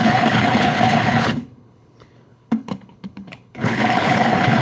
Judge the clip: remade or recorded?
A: remade